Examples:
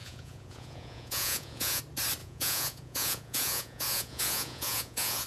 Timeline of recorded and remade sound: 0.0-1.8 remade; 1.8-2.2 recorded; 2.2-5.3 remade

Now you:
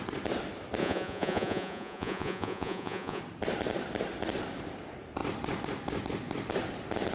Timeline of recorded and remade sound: 0.0-0.8 recorded; 0.8-3.2 remade; 3.2-7.1 recorded

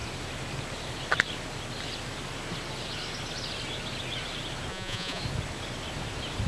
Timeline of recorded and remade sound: 0.0-4.7 recorded; 4.7-5.2 remade; 5.2-6.5 recorded

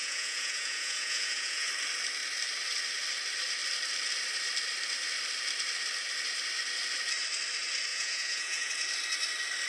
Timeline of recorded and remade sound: 0.0-1.7 remade; 1.7-7.9 recorded; 7.9-8.7 remade; 8.7-9.7 recorded

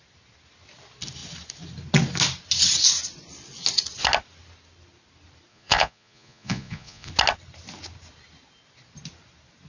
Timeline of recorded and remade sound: 0.0-5.5 recorded; 5.5-7.1 remade; 7.1-9.7 recorded

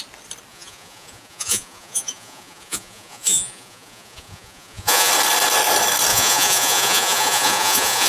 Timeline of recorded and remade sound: 0.0-0.5 recorded; 0.5-5.1 remade; 5.1-6.1 recorded; 6.1-8.1 remade

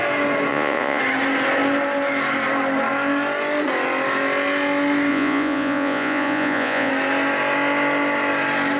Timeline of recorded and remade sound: 0.0-0.5 recorded; 0.5-1.0 remade; 1.0-5.1 recorded; 5.1-6.9 remade; 6.9-8.8 recorded

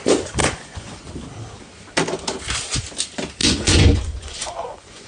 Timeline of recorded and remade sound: 0.0-0.4 recorded; 0.4-1.0 remade; 1.0-3.4 recorded; 3.4-5.1 remade